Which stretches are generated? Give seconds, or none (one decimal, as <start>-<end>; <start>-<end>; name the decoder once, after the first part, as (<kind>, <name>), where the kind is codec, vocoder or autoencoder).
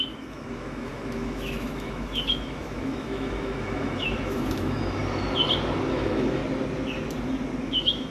0.0-5.0 (autoencoder, DAC-VAE); 5.9-6.4; 7.6-8.1